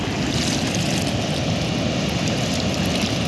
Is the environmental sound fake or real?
real